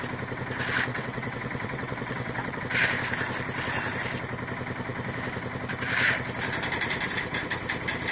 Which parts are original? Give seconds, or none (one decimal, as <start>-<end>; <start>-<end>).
0.0-0.9; 2.6-8.1